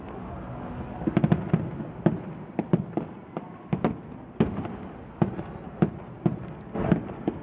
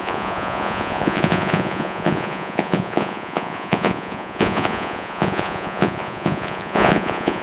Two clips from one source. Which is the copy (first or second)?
second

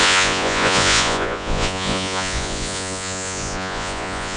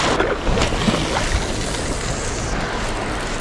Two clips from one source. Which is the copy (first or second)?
first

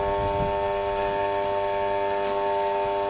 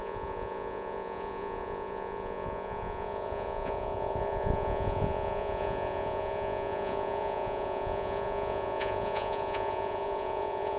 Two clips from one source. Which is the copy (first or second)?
second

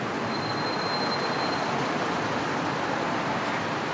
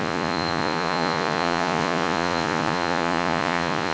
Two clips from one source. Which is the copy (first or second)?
second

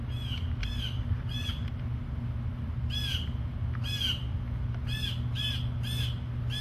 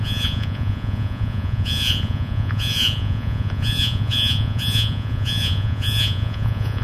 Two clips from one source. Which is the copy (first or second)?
second